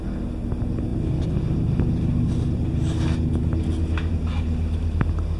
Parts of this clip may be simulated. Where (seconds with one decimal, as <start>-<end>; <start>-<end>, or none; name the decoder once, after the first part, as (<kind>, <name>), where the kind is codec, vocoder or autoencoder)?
none